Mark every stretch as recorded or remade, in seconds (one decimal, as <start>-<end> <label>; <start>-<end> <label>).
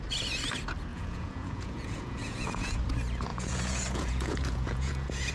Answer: 0.0-0.9 recorded; 0.9-2.8 remade; 2.8-3.3 recorded; 3.3-5.3 remade